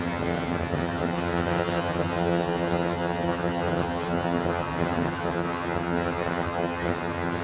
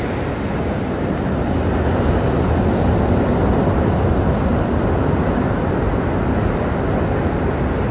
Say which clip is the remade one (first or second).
first